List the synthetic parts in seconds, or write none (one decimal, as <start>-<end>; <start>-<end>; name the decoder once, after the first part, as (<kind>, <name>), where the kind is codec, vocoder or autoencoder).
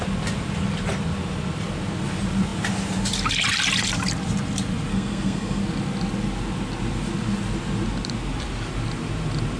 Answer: 4.9-5.6 (codec, SNAC)